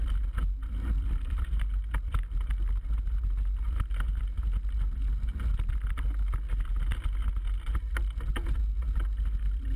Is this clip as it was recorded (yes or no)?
yes